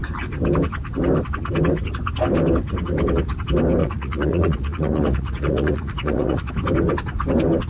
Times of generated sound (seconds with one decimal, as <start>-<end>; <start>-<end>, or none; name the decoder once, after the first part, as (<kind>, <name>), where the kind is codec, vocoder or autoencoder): 3.8-6.5 (vocoder, Vocos)